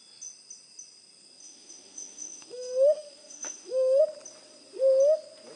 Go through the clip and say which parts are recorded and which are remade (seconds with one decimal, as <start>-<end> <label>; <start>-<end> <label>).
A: 0.0-1.4 recorded; 1.4-4.0 remade; 4.0-5.6 recorded